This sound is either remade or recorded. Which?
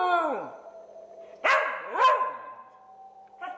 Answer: recorded